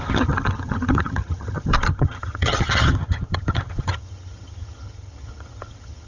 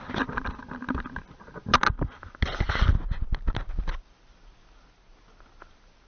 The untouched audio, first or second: second